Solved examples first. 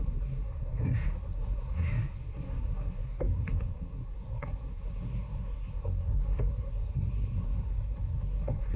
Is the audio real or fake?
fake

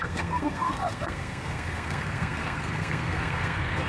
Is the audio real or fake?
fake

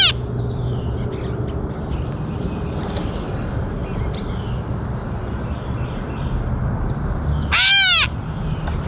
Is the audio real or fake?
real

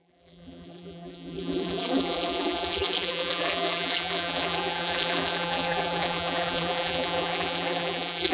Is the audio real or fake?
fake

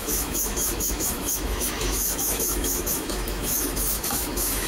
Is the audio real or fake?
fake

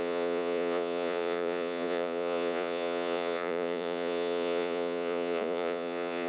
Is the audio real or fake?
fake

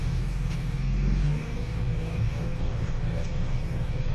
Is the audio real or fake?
fake